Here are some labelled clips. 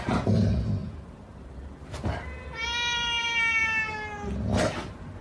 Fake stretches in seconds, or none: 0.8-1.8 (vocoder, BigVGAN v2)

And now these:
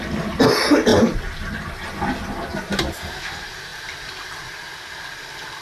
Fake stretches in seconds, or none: 0.0-5.6 (vocoder, BigVGAN v2)

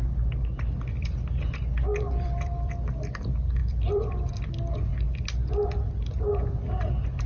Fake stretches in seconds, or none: 1.9-2.7 (vocoder, BigVGAN v2); 3.6-4.3

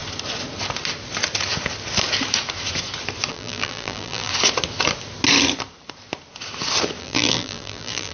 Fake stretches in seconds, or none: 3.3-4.3 (vocoder, BigVGAN v2); 7.0-8.1

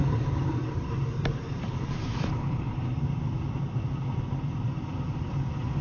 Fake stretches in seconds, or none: 0.0-3.1 (vocoder, BigVGAN v2)

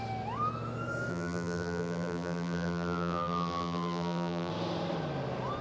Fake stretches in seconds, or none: 1.1-4.5 (vocoder, BigVGAN v2)